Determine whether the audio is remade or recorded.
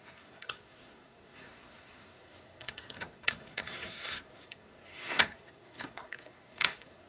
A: remade